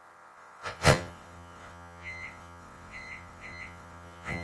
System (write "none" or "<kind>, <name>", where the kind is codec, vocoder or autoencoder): vocoder, WaveNeXt